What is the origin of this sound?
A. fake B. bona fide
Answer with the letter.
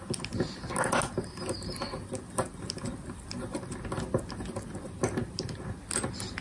B